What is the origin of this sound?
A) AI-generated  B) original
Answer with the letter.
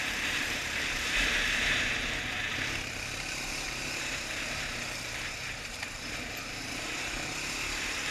A